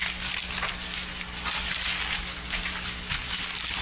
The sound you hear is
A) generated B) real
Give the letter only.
B